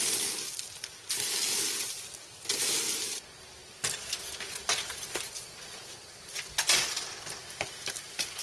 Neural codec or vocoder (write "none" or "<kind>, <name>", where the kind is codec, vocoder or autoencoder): none